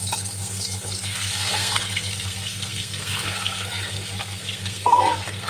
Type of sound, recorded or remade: remade